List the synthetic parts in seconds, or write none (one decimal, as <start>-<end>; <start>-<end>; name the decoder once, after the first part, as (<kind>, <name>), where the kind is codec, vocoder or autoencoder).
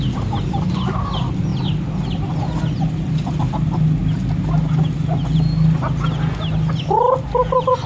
none